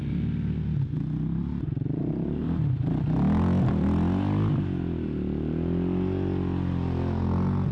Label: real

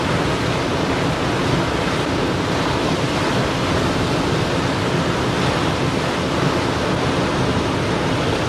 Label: real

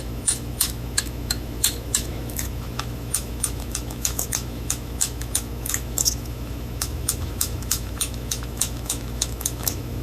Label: fake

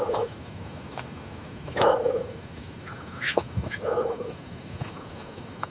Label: fake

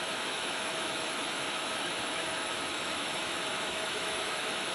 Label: fake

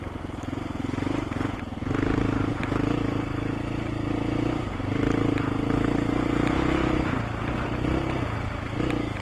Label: real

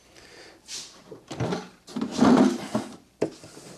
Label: real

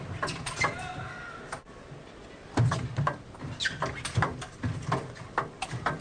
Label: real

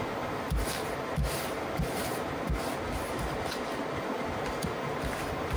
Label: real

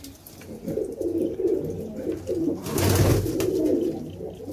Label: real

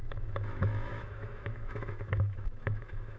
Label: fake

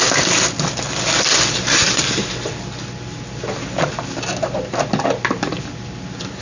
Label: real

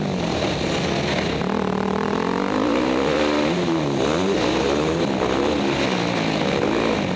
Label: real